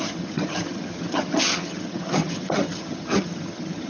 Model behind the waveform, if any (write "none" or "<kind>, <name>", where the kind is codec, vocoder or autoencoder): vocoder, HiFi-GAN